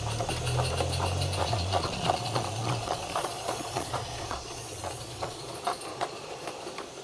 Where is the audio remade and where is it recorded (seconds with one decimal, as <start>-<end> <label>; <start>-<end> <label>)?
0.0-1.4 recorded; 1.4-5.5 remade; 5.5-5.9 recorded; 5.9-6.5 remade; 6.5-7.0 recorded